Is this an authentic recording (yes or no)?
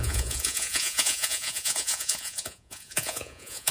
no